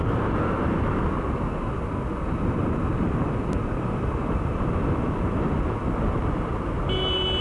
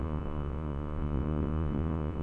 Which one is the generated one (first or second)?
second